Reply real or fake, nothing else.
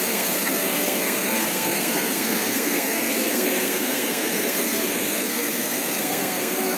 fake